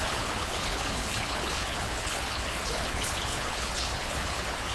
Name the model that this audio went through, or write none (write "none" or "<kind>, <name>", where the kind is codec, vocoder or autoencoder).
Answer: codec, HILCodec